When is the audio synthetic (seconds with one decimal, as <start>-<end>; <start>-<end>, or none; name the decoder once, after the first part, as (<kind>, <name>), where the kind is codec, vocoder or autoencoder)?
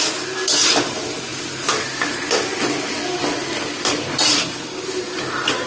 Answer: none